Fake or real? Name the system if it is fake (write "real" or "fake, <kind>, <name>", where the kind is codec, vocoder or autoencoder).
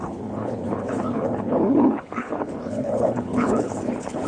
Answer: fake, codec, HILCodec